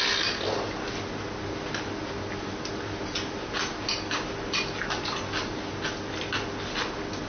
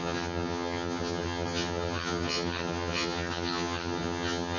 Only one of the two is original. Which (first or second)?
first